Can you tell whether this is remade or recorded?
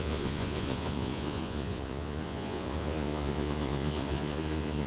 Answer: remade